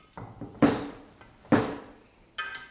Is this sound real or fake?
real